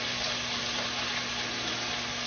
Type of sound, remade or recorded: recorded